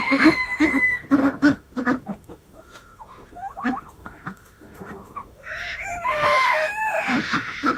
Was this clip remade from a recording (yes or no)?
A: yes